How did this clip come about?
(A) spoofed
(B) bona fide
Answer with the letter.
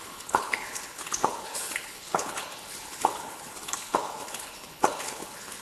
A